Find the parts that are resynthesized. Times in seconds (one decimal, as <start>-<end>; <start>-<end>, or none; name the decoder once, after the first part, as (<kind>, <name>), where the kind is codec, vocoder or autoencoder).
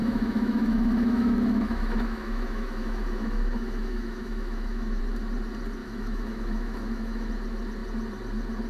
0.0-5.0 (autoencoder, DAC-VAE); 5.8-7.3